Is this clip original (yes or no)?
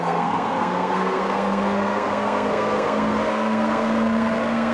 no